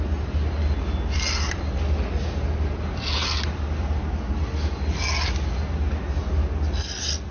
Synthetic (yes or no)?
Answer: no